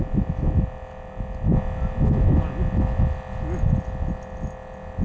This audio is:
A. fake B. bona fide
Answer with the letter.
B